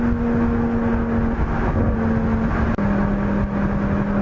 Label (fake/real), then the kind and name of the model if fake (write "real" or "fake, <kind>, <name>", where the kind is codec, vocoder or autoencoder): real